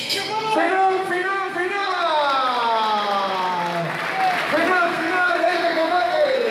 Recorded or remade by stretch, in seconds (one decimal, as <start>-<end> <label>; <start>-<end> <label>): 0.0-2.0 remade; 2.0-4.7 recorded; 4.7-6.5 remade